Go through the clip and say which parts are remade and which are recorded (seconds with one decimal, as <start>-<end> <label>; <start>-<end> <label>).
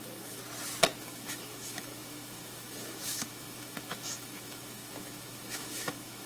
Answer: 0.0-0.4 remade; 0.4-1.0 recorded; 1.0-6.3 remade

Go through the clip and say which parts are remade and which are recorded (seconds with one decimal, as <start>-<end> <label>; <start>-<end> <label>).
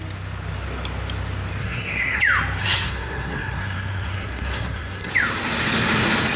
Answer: 0.0-1.6 recorded; 1.6-2.2 remade; 2.2-2.6 recorded; 2.6-5.1 remade; 5.1-6.4 recorded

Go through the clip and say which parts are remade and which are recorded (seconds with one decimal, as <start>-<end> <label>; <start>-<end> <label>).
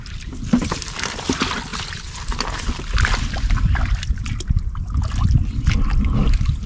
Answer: 0.0-6.7 recorded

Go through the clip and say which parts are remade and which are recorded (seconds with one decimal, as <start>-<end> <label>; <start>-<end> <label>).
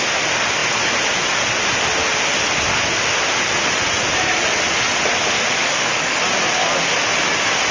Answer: 0.0-5.6 recorded; 5.6-6.2 remade; 6.2-7.7 recorded